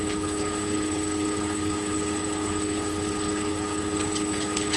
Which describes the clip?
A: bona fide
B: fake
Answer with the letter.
B